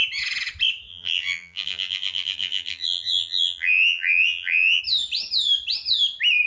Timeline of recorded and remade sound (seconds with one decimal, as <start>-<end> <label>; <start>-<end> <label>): 0.0-0.9 recorded; 0.9-4.8 remade; 4.8-6.5 recorded